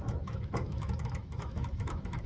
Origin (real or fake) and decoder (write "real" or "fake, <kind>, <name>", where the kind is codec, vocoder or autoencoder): fake, autoencoder, DAC-VAE